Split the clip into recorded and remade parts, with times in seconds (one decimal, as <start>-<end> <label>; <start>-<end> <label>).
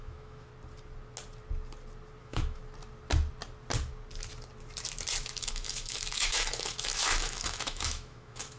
0.0-0.5 remade; 0.5-2.2 recorded; 2.2-2.6 remade; 2.6-5.2 recorded; 5.2-8.6 remade